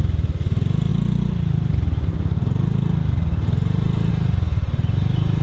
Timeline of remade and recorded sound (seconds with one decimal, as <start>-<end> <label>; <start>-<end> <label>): 0.0-5.4 recorded